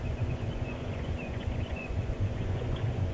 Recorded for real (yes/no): no